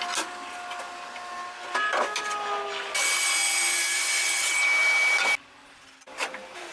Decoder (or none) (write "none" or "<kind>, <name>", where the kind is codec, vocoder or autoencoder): none